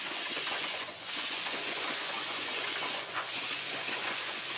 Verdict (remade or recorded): remade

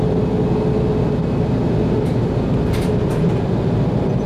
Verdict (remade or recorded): recorded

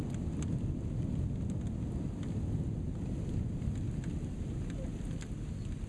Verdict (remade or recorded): recorded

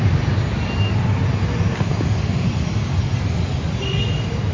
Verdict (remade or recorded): recorded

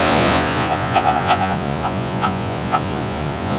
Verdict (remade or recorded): remade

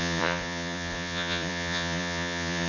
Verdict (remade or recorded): remade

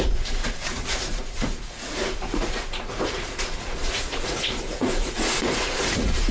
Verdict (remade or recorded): remade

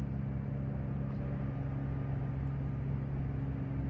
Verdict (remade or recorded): recorded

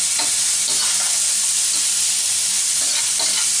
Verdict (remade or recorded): recorded